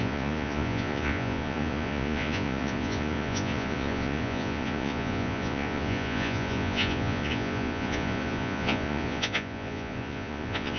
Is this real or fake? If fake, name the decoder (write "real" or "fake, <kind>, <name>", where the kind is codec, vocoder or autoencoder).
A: fake, vocoder, Vocos